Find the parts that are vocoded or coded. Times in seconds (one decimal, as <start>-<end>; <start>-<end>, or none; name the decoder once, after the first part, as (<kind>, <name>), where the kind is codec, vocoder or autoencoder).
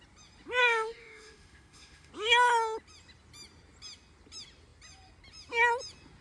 0.6-2.1 (autoencoder, DAC-VAE)